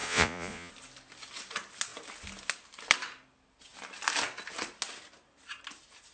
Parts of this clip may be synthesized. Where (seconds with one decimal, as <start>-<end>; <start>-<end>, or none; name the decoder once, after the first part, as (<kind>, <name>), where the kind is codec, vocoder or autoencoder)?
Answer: 0.0-0.7 (vocoder, Vocos)